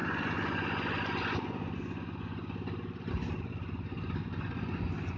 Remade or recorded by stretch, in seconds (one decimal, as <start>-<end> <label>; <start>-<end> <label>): 0.0-5.2 recorded